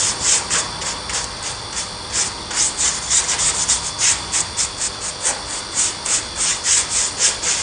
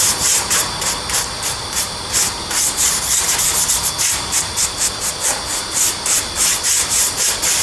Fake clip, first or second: second